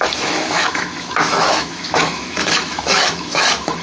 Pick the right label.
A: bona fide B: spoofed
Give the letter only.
B